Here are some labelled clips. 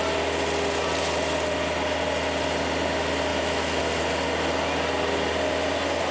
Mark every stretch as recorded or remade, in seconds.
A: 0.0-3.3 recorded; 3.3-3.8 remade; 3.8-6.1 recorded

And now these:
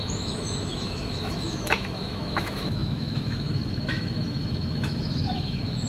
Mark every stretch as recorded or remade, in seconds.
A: 0.0-5.9 remade

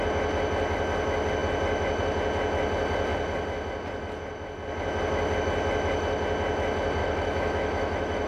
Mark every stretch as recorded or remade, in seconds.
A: 0.0-7.0 recorded; 7.0-8.3 remade

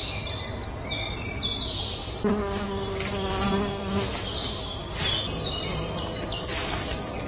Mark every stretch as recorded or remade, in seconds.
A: 0.0-7.3 recorded

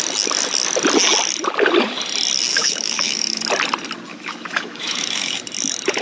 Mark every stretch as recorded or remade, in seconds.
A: 0.0-2.5 recorded; 2.5-3.4 remade; 3.4-4.1 recorded; 4.1-5.4 remade; 5.4-6.0 recorded